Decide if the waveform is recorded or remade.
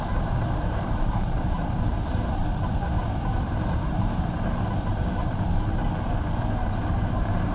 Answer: remade